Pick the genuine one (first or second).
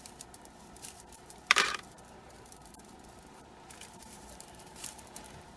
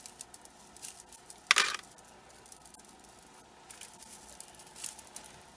second